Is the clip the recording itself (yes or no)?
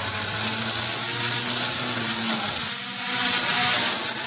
yes